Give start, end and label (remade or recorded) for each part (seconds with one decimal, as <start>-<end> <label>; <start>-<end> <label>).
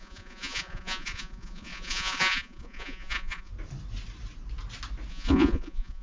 0.0-3.5 remade; 3.5-5.1 recorded; 5.1-6.0 remade